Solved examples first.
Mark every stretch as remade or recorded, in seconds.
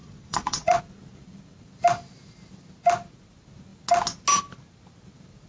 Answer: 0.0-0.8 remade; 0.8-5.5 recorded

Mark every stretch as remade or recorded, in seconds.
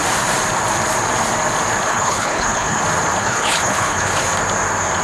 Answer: 0.0-1.9 recorded; 1.9-2.8 remade; 2.8-3.2 recorded; 3.2-4.1 remade; 4.1-5.0 recorded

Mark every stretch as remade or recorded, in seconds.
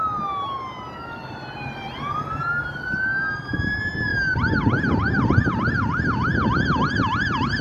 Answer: 0.0-4.1 recorded; 4.1-7.6 remade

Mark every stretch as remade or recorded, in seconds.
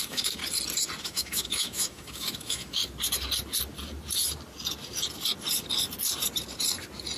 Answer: 0.0-0.4 remade; 0.4-1.0 recorded; 1.0-2.8 remade; 2.8-7.2 recorded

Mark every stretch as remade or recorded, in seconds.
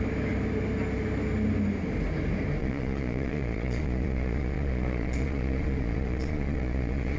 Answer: 0.0-2.6 recorded; 2.6-7.2 remade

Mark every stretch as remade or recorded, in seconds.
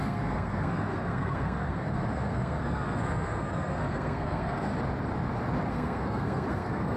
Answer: 0.0-4.7 remade; 4.7-5.7 recorded; 5.7-7.0 remade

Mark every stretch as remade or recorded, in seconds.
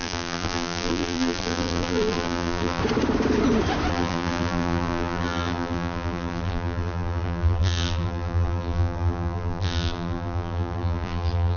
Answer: 0.0-2.8 remade; 2.8-3.9 recorded; 3.9-11.6 remade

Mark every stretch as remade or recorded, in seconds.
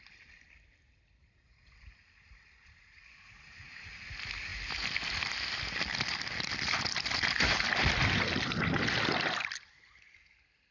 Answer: 0.0-10.7 recorded